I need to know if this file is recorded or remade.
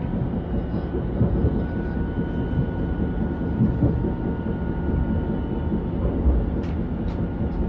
recorded